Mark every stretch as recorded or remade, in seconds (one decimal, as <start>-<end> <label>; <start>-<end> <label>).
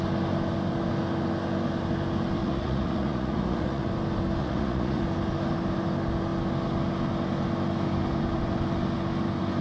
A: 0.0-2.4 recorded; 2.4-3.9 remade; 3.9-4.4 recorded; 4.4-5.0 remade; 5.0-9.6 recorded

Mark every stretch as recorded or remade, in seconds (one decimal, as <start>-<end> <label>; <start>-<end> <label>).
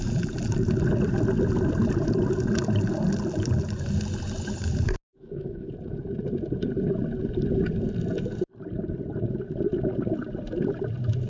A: 0.0-5.1 recorded; 5.1-5.7 remade; 5.7-11.3 recorded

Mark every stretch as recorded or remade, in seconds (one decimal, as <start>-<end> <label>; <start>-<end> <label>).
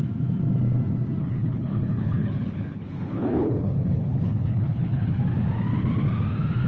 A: 0.0-1.2 recorded; 1.2-5.2 remade; 5.2-6.7 recorded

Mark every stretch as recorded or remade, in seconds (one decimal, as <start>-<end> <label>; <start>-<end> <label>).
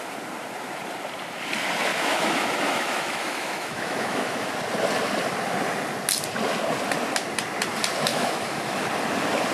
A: 0.0-1.9 recorded; 1.9-4.5 remade; 4.5-8.1 recorded; 8.1-8.8 remade; 8.8-9.5 recorded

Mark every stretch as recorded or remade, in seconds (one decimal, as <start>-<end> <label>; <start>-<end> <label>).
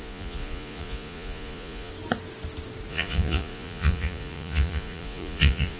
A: 0.0-1.9 remade; 1.9-2.9 recorded; 2.9-5.8 remade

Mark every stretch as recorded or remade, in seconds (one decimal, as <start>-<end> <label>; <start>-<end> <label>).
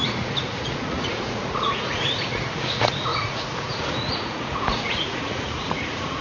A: 0.0-6.2 remade